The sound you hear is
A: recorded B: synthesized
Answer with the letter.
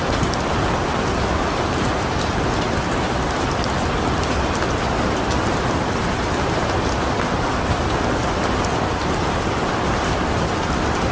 A